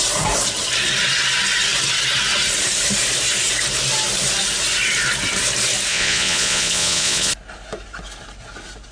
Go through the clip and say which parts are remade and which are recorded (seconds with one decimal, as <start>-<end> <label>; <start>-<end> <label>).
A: 0.0-5.9 recorded; 5.9-7.3 remade; 7.3-8.9 recorded